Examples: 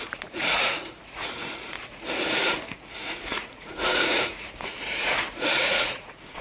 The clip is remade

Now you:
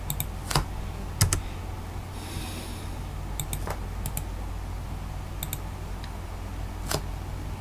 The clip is recorded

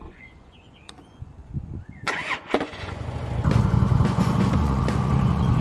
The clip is remade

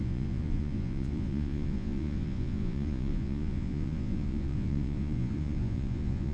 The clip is remade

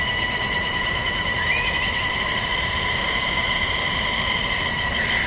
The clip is recorded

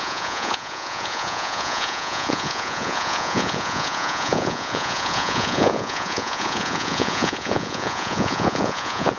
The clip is remade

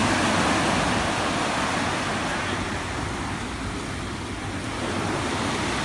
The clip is recorded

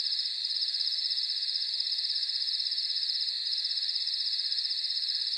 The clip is remade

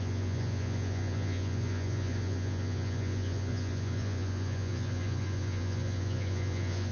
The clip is remade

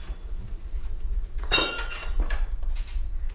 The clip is remade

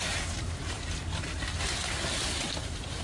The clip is recorded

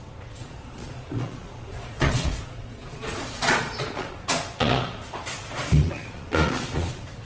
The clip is remade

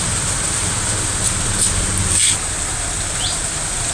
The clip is recorded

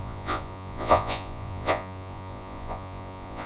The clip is remade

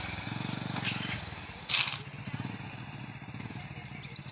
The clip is recorded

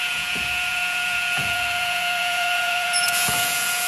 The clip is remade